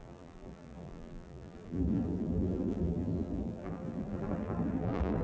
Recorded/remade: remade